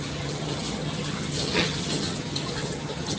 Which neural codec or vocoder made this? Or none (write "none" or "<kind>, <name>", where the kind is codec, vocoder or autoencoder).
vocoder, HiFi-GAN